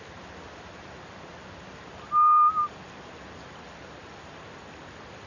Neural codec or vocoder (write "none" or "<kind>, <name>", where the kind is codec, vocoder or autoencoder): none